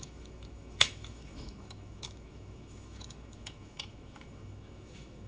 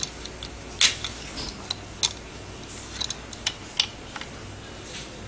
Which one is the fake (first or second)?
first